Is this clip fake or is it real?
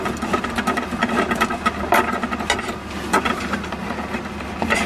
real